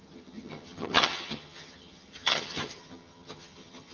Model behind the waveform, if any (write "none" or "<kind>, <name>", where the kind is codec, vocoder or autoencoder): vocoder, HiFi-GAN